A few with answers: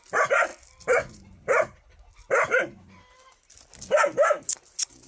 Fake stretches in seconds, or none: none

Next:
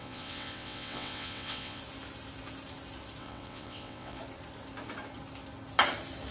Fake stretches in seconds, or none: 0.0-1.8; 3.2-4.2

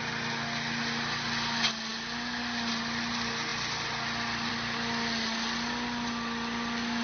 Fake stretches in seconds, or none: none